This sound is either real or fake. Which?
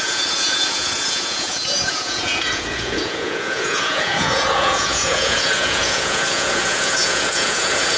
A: fake